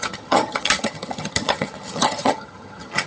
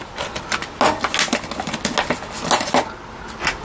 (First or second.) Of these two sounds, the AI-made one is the first